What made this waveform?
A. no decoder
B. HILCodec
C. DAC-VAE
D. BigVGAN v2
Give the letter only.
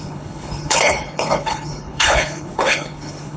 B